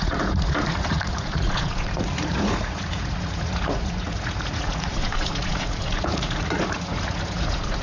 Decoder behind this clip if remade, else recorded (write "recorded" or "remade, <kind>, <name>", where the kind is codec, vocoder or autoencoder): remade, vocoder, Vocos